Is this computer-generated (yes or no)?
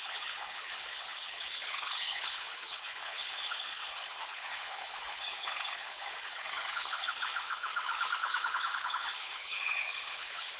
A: yes